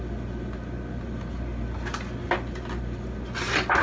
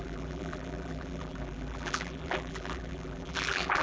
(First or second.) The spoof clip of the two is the second